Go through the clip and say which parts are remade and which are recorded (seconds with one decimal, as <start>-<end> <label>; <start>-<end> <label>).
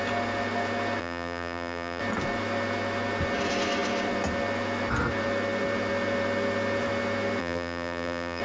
0.0-1.0 recorded; 1.0-2.0 remade; 2.0-7.4 recorded; 7.4-8.4 remade